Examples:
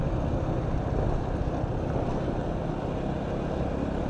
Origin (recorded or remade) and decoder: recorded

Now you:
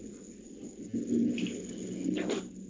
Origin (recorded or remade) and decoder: recorded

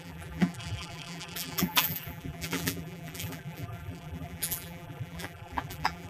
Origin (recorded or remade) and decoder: remade, vocoder, BigVGAN v2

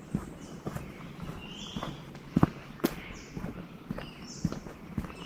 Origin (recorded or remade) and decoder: recorded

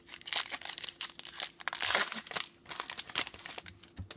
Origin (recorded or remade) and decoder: recorded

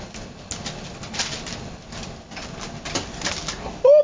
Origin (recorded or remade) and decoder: recorded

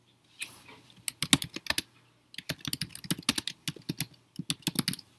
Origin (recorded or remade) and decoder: recorded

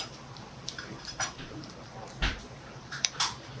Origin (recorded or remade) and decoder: remade, vocoder, BigVGAN v2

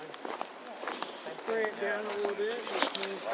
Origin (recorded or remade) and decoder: recorded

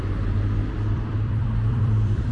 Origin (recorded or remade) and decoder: remade, vocoder, BigVGAN v2